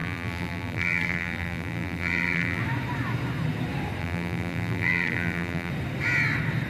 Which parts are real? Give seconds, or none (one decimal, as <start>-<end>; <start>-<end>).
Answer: 2.6-4.0; 5.7-6.7